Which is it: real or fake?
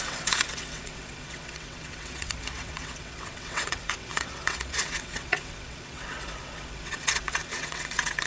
fake